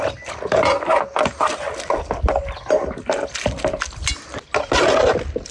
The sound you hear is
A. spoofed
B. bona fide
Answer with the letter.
B